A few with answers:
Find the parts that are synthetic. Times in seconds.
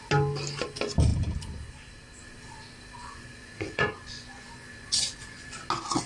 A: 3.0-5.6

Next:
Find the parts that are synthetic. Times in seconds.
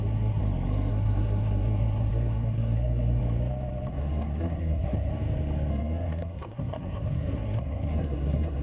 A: 0.0-0.4; 0.9-3.2; 3.9-5.1; 5.7-8.6